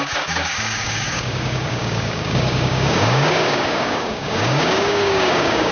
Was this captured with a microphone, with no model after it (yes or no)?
no